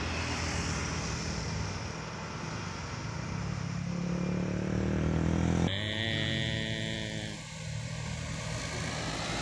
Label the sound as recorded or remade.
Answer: recorded